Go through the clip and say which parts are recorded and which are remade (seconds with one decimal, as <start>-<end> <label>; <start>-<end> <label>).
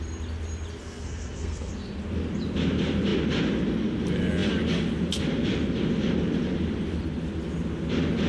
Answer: 0.0-0.8 recorded; 0.8-1.7 remade; 1.7-8.3 recorded